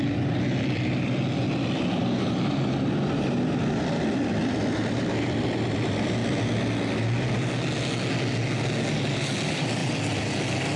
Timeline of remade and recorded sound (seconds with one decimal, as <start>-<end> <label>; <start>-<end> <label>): 0.0-6.2 remade; 6.2-8.9 recorded; 8.9-10.8 remade